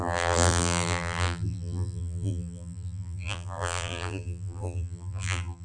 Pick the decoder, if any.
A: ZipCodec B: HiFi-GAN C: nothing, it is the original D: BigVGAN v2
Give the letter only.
D